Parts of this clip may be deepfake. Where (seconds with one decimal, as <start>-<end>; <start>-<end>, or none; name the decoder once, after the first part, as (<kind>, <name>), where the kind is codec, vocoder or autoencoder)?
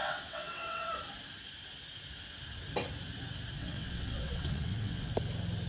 0.0-0.9 (vocoder, WaveNeXt); 3.6-5.1